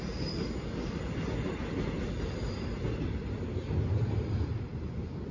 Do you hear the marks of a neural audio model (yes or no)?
no